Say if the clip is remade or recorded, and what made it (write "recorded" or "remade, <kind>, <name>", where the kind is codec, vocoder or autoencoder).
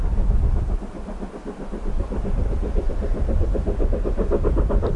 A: recorded